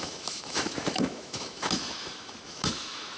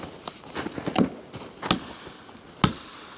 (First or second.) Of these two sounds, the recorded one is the second